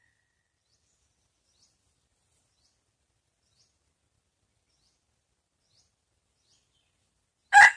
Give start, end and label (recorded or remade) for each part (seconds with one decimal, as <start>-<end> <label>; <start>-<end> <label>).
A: 0.0-7.8 recorded

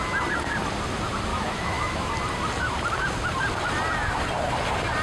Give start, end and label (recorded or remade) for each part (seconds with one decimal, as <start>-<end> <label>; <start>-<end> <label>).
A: 0.0-1.3 recorded; 1.3-2.1 remade; 2.1-5.0 recorded

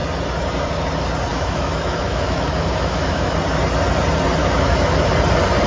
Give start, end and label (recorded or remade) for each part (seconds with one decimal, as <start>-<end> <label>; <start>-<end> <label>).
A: 0.0-1.3 recorded; 1.3-3.3 remade; 3.3-4.4 recorded; 4.4-5.1 remade; 5.1-5.7 recorded

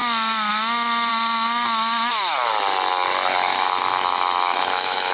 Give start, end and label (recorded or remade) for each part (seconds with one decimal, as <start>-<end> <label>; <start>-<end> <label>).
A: 0.0-3.3 recorded; 3.3-5.1 remade